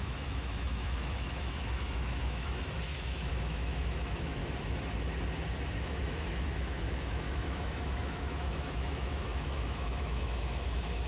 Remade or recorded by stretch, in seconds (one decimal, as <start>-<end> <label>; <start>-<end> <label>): 0.0-4.4 remade; 4.4-5.7 recorded; 5.7-11.1 remade